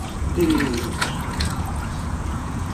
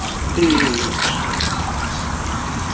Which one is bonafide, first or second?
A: second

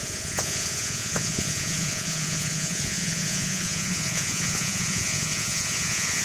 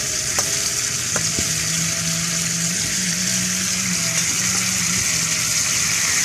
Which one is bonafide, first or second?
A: second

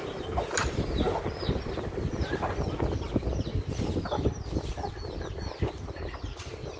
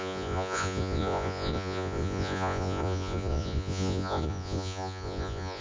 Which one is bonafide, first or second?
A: first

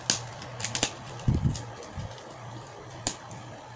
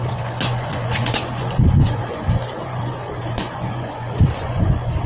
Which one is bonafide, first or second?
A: first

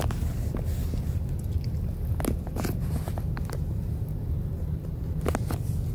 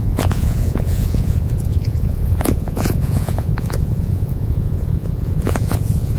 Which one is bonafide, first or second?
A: first